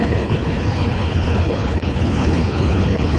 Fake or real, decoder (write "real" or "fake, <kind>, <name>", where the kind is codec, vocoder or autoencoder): fake, codec, HILCodec